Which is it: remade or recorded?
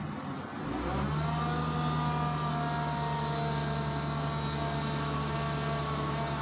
recorded